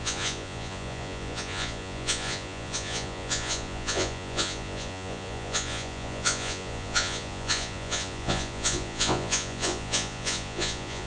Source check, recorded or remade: remade